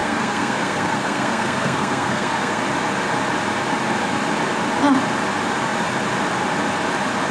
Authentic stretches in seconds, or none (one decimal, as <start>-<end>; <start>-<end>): 2.6-7.3